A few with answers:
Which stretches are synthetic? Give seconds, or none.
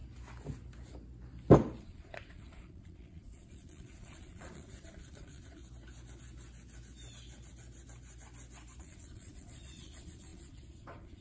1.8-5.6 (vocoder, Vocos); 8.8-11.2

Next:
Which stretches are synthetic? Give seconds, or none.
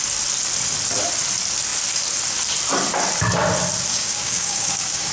3.9-5.1 (codec, DAC)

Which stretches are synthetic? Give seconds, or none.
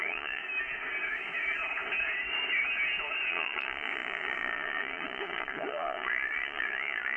0.0-0.4 (vocoder, Vocos); 3.3-7.2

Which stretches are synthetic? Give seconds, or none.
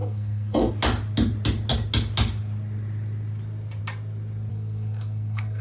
0.0-0.7 (codec, SNAC); 4.5-5.6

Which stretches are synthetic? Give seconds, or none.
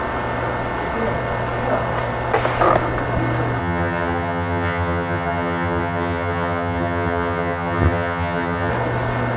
3.6-8.7 (vocoder, HiFi-GAN)